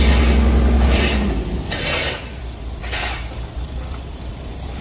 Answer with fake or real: real